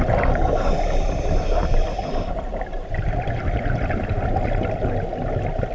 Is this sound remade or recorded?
recorded